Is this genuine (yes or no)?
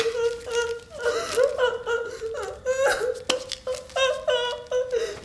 yes